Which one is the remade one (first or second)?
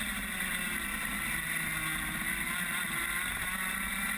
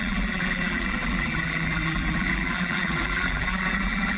second